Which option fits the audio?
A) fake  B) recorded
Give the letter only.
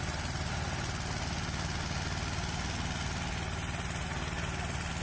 B